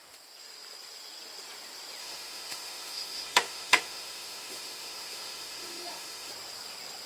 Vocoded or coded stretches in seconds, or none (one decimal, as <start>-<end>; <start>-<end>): 2.0-6.3